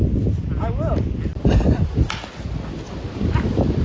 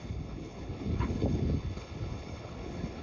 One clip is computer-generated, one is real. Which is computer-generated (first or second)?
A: second